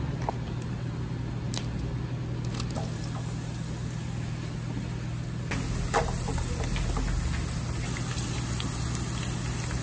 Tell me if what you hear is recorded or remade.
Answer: recorded